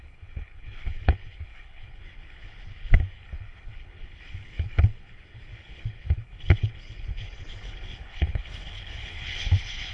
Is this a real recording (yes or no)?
no